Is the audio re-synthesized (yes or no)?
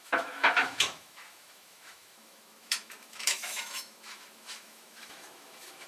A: yes